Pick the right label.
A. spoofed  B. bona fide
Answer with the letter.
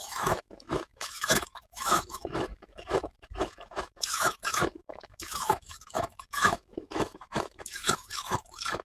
A